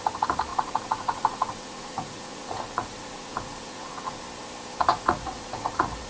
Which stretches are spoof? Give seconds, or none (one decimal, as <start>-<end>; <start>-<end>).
0.5-4.2; 4.9-6.1